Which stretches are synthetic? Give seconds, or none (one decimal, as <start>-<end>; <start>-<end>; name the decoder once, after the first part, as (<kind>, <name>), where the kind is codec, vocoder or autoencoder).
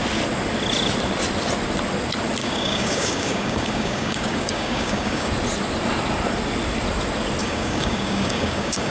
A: 2.4-5.3 (codec, DAC); 7.4-8.9